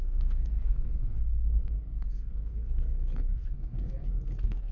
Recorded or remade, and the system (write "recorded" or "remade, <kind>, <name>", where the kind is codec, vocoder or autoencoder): remade, codec, SNAC